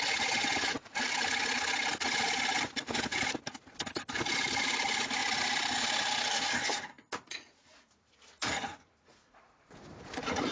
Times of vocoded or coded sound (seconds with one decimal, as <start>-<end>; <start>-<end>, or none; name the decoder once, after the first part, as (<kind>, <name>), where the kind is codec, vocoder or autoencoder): 0.0-1.1 (vocoder, Vocos); 4.6-5.2; 6.7-10.5